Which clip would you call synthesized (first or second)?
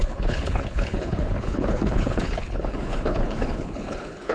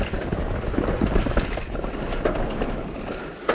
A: first